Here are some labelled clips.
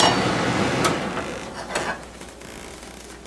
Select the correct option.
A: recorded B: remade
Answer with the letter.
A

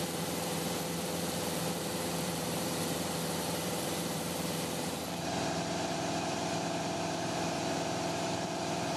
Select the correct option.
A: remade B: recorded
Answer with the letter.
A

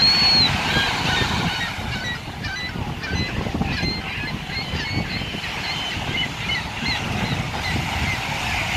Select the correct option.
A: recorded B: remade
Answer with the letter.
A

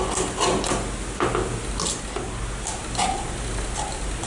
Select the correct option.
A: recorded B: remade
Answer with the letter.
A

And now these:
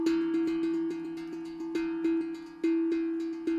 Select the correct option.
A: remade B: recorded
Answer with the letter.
B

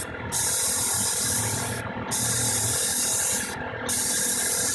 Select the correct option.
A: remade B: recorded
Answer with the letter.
B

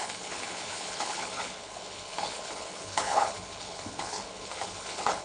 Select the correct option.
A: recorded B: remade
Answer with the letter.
B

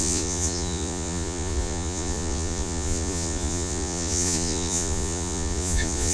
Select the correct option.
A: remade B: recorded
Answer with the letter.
A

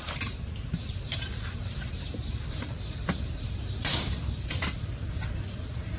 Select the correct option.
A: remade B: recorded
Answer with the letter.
A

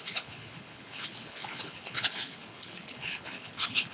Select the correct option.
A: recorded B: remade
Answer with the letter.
B